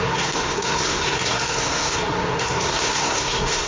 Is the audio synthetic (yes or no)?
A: yes